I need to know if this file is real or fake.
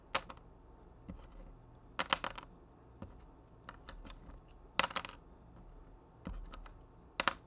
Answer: real